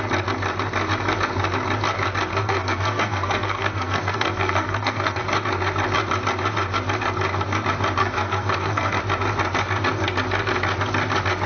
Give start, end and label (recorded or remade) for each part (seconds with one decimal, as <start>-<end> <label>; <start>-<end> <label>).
0.0-2.3 recorded; 2.3-5.2 remade; 5.2-8.0 recorded; 8.0-9.0 remade; 9.0-11.5 recorded